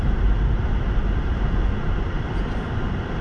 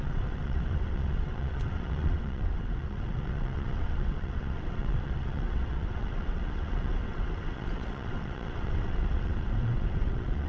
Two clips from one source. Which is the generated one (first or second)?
second